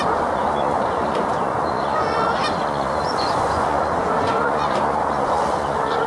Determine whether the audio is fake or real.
fake